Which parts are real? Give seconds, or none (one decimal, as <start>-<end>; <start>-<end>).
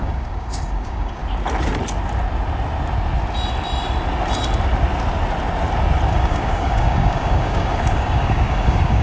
1.2-6.1